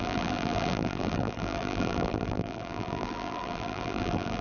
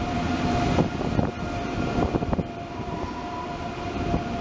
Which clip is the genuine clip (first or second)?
second